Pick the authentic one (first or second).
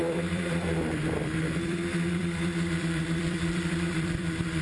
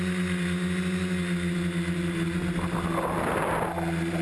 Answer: second